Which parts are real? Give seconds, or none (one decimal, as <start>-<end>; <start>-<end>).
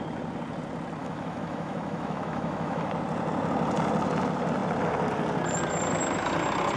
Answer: 0.0-1.0; 2.9-6.8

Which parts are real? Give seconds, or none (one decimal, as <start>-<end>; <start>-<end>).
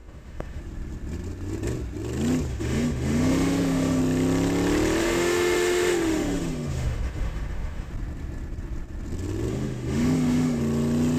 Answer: 0.6-2.5; 4.0-5.0; 7.9-9.5; 10.6-11.2